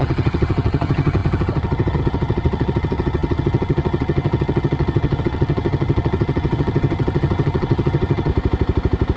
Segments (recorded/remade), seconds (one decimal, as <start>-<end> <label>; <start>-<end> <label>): 0.0-8.3 remade; 8.3-9.2 recorded